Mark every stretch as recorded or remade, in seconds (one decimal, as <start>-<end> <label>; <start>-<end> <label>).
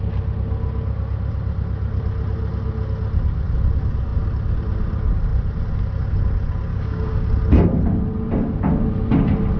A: 0.0-6.7 recorded; 6.7-7.3 remade; 7.3-9.6 recorded